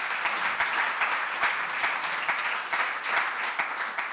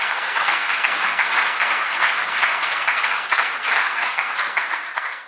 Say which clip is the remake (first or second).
second